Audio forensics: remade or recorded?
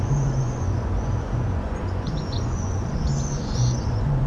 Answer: remade